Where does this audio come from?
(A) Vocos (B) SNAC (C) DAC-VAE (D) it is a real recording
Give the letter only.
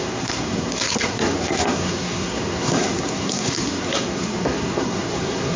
B